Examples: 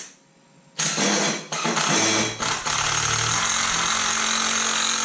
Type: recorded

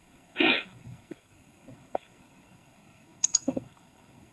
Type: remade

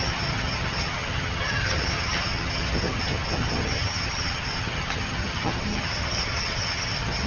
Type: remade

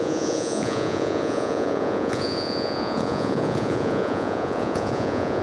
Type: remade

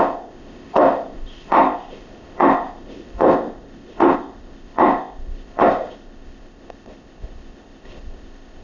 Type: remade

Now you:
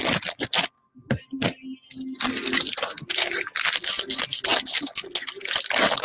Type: recorded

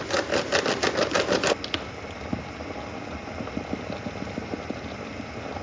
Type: recorded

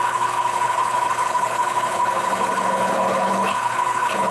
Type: remade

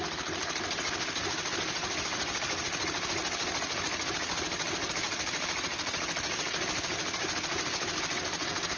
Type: recorded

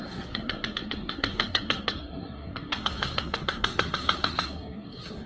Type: remade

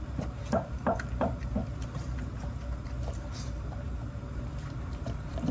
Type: remade